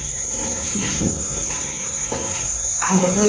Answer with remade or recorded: remade